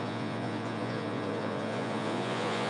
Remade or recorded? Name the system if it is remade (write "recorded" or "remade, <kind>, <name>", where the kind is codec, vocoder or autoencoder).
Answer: remade, vocoder, Vocos